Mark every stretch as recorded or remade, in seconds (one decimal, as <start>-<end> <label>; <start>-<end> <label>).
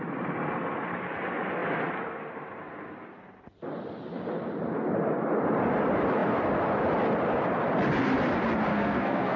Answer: 0.0-8.7 recorded; 8.7-9.4 remade